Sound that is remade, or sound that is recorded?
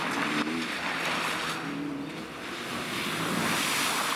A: recorded